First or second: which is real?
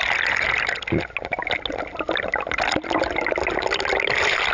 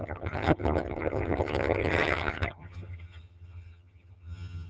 first